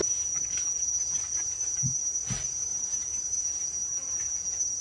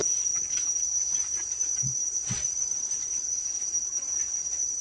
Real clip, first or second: first